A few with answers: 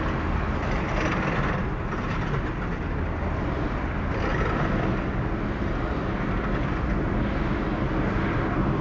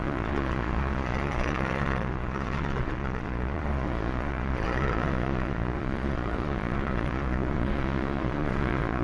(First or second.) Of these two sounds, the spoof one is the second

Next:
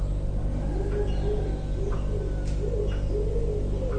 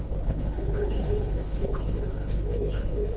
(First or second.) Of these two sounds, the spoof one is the second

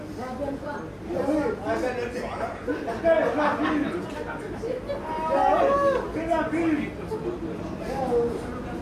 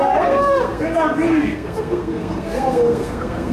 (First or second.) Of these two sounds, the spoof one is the second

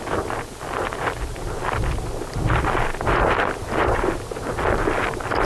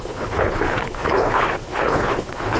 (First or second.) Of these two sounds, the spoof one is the second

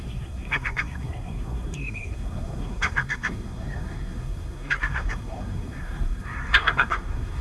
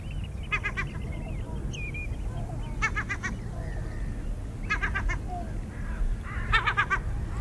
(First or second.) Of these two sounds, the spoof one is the first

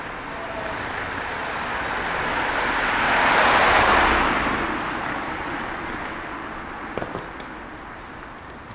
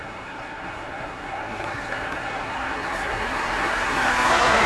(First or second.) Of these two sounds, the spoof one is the second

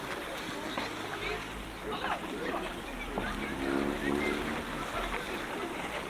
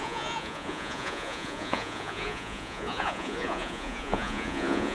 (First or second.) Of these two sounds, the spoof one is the second